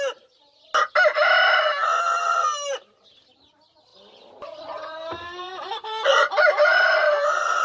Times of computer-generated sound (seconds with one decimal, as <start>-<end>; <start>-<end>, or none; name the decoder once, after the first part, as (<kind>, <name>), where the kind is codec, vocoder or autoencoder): 3.9-7.6 (vocoder, BigVGAN v2)